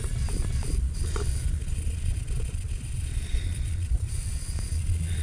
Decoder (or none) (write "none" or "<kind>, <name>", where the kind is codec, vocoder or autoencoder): vocoder, Vocos